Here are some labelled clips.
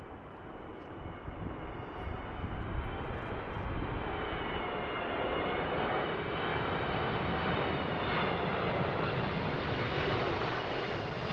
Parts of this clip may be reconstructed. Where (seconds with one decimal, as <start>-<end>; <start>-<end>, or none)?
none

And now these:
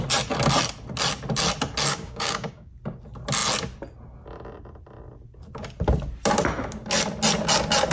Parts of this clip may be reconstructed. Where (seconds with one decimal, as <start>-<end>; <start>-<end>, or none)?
1.9-2.7

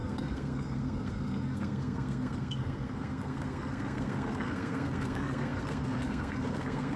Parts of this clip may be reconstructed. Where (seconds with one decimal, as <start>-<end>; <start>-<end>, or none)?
0.0-7.0

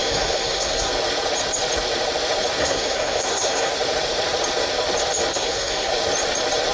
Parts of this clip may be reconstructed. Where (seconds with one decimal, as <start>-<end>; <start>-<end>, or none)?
0.0-0.9; 2.6-3.7; 5.3-5.9

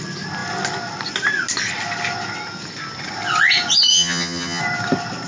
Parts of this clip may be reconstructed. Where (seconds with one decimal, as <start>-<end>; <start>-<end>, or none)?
3.9-4.6